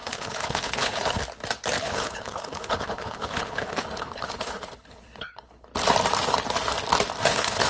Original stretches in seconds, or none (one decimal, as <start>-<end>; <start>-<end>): 1.2-1.8; 5.7-7.2